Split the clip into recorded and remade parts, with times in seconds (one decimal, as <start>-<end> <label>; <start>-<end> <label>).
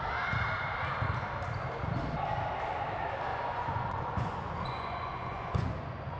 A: 0.0-3.3 recorded; 3.3-6.2 remade